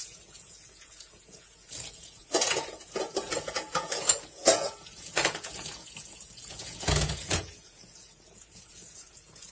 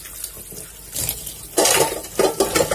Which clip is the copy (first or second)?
first